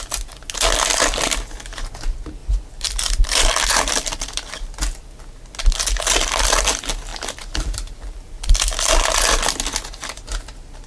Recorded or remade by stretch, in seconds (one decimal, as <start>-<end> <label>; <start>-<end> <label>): 0.0-2.4 recorded; 2.4-5.2 remade; 5.2-7.1 recorded; 7.1-8.6 remade; 8.6-10.9 recorded

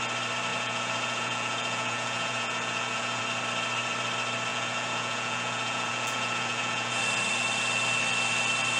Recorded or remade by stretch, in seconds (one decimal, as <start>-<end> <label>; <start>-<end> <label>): 0.0-0.5 recorded; 0.5-3.2 remade; 3.2-4.5 recorded; 4.5-7.0 remade; 7.0-8.8 recorded

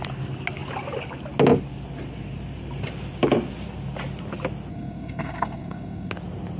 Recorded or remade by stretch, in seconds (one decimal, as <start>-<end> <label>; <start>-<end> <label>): 0.0-4.7 recorded; 4.7-6.1 remade; 6.1-6.6 recorded

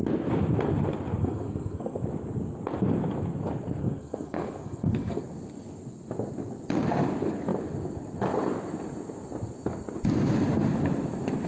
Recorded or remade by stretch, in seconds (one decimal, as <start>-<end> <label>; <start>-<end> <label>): 0.0-1.2 recorded; 1.2-2.0 remade; 2.0-3.8 recorded; 3.8-5.2 remade; 5.2-11.5 recorded

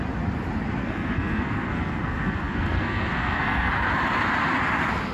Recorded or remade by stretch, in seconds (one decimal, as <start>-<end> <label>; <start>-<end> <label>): 0.0-0.8 recorded; 0.8-3.7 remade; 3.7-5.1 recorded

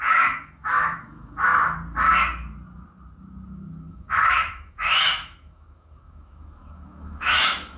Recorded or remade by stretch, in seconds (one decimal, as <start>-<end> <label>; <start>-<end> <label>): 0.0-1.5 remade; 1.5-3.9 recorded; 3.9-7.8 remade